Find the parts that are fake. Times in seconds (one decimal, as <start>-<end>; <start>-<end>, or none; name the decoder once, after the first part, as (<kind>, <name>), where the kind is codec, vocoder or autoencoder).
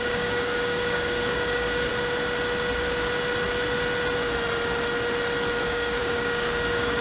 0.0-1.9 (codec, DAC); 5.6-7.0